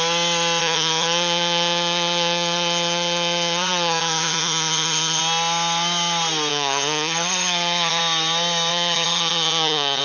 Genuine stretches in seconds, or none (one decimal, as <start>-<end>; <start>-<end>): 0.0-0.6; 5.2-6.5; 8.0-8.7